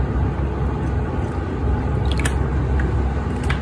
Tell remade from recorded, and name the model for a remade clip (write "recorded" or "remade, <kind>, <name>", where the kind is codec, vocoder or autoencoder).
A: recorded